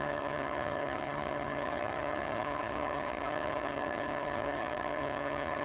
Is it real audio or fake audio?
fake